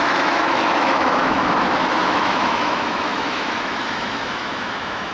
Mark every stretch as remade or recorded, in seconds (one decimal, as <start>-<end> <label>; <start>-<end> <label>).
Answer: 0.0-5.1 remade